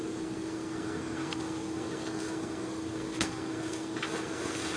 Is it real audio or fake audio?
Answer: fake